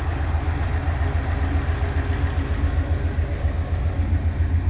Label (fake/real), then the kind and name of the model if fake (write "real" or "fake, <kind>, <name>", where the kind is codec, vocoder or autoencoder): real